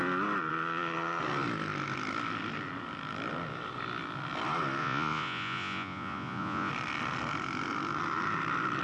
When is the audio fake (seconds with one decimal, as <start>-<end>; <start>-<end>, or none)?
4.8-6.7